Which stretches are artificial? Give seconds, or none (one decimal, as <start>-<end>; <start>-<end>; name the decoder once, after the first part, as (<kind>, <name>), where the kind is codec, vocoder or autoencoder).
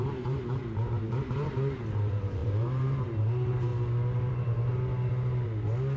0.0-3.7 (vocoder, BigVGAN v2); 4.3-4.7